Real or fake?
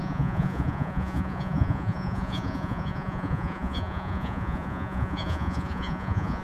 fake